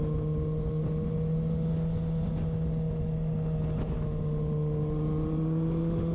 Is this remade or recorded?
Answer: recorded